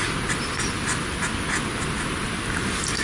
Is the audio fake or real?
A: real